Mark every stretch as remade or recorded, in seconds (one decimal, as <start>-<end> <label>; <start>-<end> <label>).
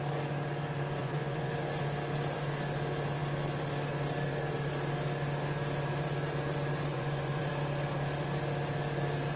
0.0-1.0 recorded; 1.0-1.5 remade; 1.5-6.9 recorded; 6.9-7.4 remade; 7.4-9.4 recorded